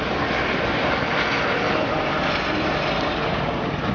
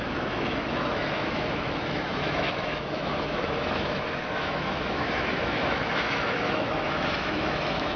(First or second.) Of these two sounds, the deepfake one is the second